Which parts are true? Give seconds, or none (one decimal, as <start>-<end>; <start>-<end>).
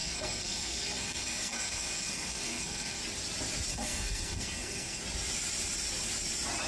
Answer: 3.0-3.7; 5.0-6.7